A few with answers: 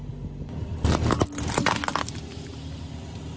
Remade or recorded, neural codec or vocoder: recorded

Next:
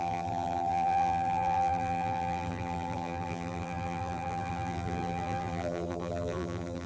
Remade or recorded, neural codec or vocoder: remade, vocoder, BigVGAN v2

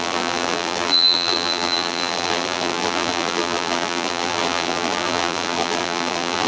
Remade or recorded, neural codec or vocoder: remade, vocoder, BigVGAN v2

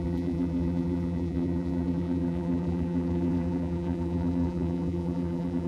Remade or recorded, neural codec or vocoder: remade, vocoder, BigVGAN v2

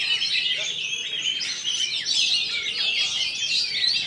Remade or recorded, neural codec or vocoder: remade, vocoder, BigVGAN v2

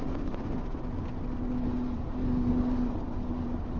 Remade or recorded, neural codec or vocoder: recorded